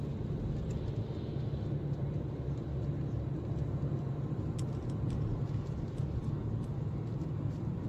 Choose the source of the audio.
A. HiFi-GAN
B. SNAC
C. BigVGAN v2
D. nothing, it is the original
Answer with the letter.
D